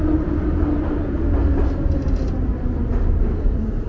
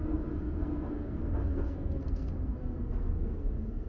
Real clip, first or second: first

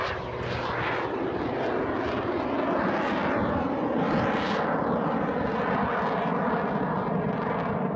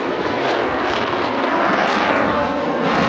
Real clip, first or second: first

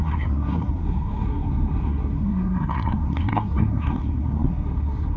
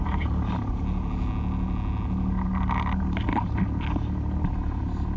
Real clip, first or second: second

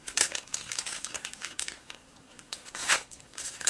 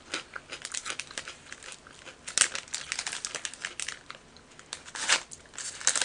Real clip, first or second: second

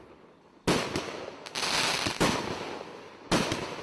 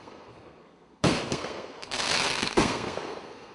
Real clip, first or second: first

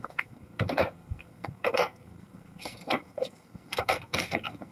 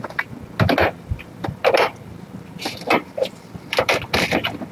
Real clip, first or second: second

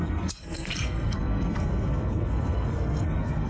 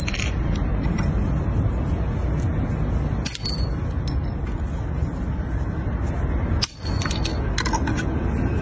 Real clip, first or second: second